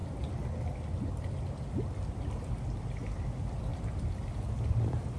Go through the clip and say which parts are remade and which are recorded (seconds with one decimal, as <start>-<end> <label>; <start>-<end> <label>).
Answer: 0.0-3.7 recorded; 3.7-4.3 remade; 4.3-5.2 recorded